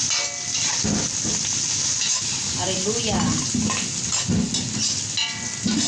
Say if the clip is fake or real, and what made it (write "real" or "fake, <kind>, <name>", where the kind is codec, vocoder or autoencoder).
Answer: real